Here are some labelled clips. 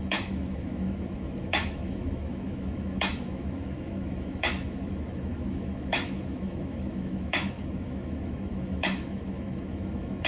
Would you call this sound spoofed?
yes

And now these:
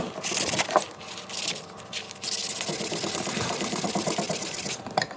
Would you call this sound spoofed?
no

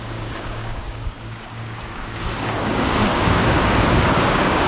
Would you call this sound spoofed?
yes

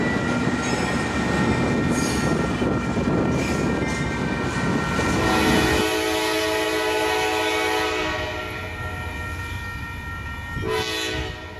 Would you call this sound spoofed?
no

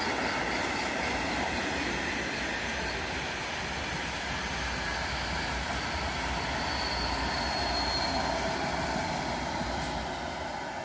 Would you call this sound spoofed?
no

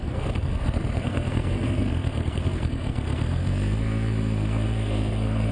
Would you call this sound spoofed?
yes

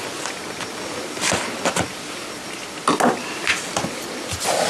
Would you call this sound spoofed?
no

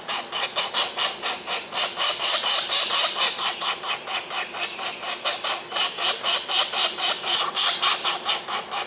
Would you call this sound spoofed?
no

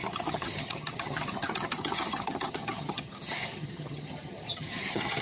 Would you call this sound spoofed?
yes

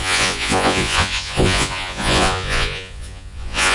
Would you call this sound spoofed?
yes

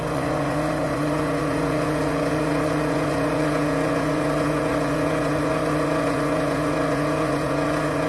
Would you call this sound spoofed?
yes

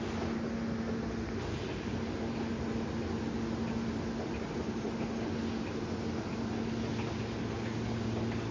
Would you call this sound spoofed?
no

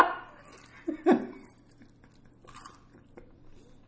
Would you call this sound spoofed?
no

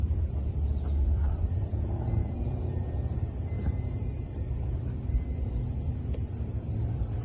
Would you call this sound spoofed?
yes